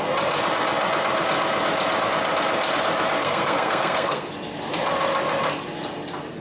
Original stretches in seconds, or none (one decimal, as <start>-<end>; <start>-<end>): 0.0-3.2; 4.3-6.4